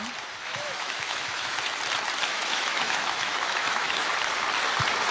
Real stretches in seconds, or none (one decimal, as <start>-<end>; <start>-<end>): 0.0-0.4; 1.6-2.3; 4.1-5.1